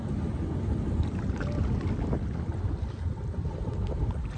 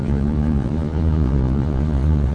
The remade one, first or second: second